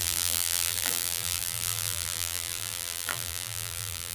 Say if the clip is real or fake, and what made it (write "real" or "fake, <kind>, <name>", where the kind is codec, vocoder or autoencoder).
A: fake, vocoder, BigVGAN v2